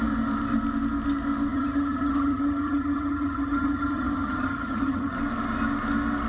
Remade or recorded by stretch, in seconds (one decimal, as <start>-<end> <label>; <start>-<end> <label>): 0.0-1.5 recorded; 1.5-5.2 remade; 5.2-6.3 recorded